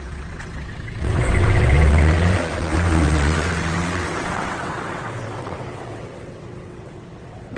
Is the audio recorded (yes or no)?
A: no